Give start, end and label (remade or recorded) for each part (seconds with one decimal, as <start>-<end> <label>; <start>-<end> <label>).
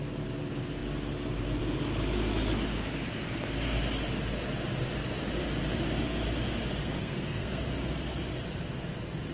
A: 0.0-6.8 recorded; 6.8-7.6 remade; 7.6-9.3 recorded